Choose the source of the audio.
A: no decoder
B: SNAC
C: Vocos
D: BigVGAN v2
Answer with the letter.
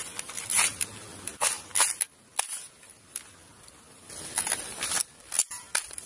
A